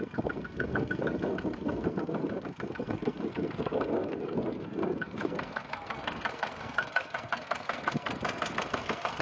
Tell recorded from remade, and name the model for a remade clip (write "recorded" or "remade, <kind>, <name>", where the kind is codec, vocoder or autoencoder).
remade, codec, SNAC